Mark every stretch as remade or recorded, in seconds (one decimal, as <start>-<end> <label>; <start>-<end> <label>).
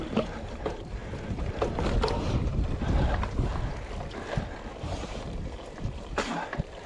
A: 0.0-1.0 remade; 1.0-2.2 recorded; 2.2-3.7 remade; 3.7-5.0 recorded; 5.0-6.9 remade